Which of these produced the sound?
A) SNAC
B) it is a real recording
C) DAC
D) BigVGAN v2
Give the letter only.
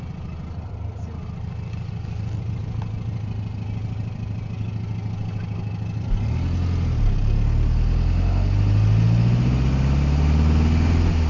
B